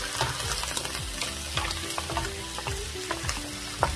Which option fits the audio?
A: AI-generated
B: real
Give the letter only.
B